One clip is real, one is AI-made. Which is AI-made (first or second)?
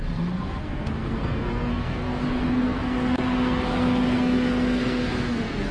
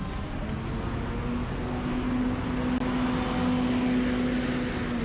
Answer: first